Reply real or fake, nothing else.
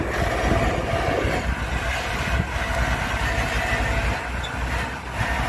real